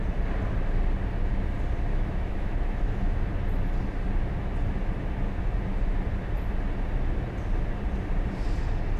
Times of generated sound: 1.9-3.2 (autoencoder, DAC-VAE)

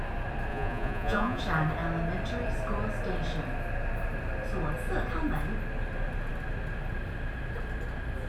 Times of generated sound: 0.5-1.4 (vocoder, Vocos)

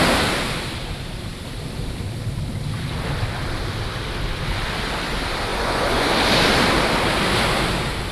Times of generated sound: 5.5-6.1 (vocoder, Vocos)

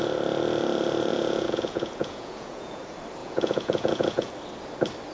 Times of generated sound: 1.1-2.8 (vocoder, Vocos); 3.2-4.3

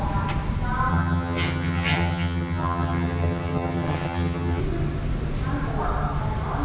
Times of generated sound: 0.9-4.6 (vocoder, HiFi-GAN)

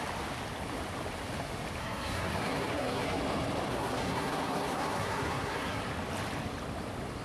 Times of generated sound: 1.8-3.2 (codec, SNAC); 3.7-5.8

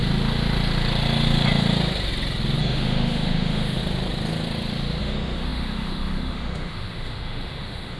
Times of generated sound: 2.6-3.8 (autoencoder, DAC-VAE); 5.0-8.0

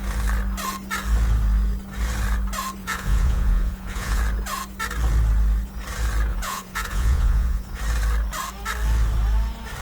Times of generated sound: 2.8-4.2 (vocoder, Vocos); 6.3-7.8